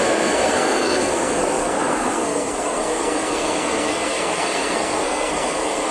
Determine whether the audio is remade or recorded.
remade